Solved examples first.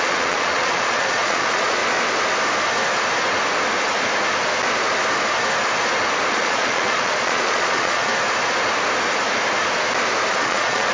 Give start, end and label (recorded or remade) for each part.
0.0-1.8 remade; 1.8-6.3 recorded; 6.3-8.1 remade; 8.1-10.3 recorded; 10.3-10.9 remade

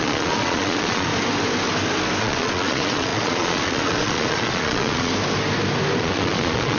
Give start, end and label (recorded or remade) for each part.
0.0-1.1 remade; 1.1-2.2 recorded; 2.2-5.1 remade; 5.1-6.0 recorded; 6.0-6.8 remade

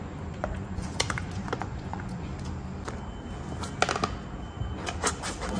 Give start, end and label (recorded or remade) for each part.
0.0-2.3 remade; 2.3-5.6 recorded

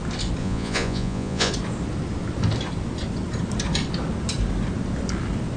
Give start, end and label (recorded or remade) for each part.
0.0-0.4 recorded; 0.4-1.5 remade; 1.5-5.6 recorded

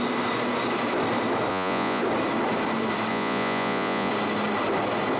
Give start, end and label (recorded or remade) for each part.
0.0-1.5 recorded; 1.5-2.0 remade; 2.0-3.1 recorded; 3.1-4.1 remade; 4.1-5.2 recorded